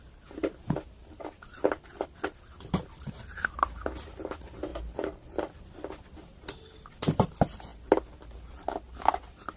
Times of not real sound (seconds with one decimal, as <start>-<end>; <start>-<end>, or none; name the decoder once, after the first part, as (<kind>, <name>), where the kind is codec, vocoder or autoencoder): none